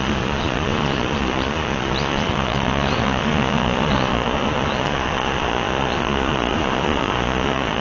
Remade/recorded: remade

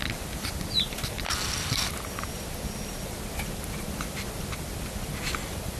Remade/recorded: recorded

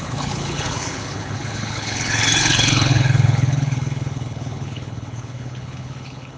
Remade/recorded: remade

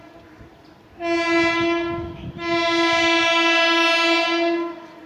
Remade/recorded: recorded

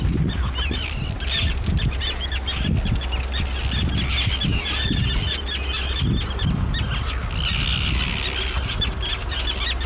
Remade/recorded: recorded